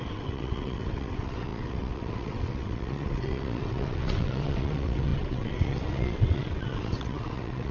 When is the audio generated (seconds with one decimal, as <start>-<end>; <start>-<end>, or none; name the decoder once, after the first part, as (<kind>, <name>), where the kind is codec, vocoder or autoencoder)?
0.0-7.7 (vocoder, WaveNeXt)